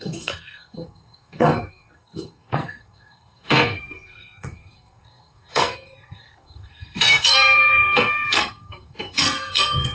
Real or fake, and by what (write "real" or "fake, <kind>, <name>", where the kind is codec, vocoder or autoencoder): fake, codec, SNAC